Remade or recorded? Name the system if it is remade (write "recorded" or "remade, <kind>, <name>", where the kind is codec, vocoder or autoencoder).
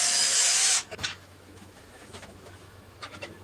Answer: remade, autoencoder, DAC-VAE